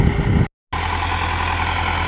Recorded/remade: recorded